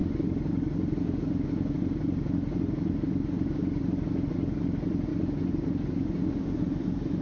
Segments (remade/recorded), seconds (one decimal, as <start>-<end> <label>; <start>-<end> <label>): 0.0-7.2 recorded

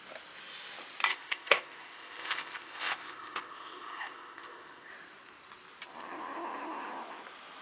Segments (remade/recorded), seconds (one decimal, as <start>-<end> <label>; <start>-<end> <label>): 0.0-1.1 recorded; 1.1-4.9 remade; 4.9-7.6 recorded

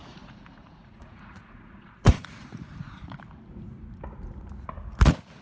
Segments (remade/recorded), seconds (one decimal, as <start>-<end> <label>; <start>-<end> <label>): 0.0-3.2 remade; 3.2-5.4 recorded

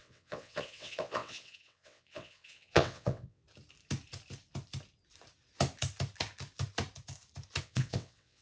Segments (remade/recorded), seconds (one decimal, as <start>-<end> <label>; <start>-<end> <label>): 0.0-3.4 remade; 3.4-7.6 recorded; 7.6-8.4 remade

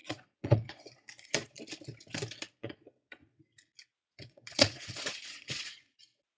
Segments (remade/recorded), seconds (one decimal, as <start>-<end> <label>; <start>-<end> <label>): 0.0-1.6 remade; 1.6-2.6 recorded; 2.6-3.4 remade; 3.4-4.0 recorded; 4.0-6.0 remade; 6.0-6.4 recorded